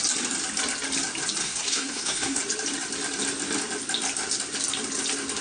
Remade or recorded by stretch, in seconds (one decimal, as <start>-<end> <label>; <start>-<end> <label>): 0.0-1.4 recorded; 1.4-2.4 remade; 2.4-5.4 recorded